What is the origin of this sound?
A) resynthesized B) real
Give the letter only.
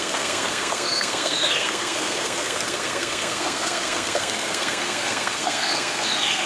A